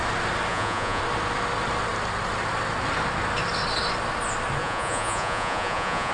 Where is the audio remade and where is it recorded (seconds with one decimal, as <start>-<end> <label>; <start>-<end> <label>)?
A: 0.0-0.5 recorded; 0.5-1.0 remade; 1.0-4.6 recorded; 4.6-6.1 remade